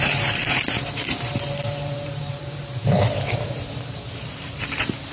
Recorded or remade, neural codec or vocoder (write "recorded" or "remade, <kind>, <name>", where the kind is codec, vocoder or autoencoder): remade, vocoder, BigVGAN v2